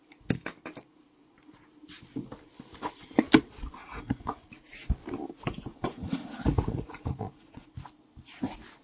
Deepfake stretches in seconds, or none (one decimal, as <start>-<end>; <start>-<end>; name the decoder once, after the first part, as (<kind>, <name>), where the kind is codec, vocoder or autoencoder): 3.8-4.4 (vocoder, Vocos); 5.7-7.7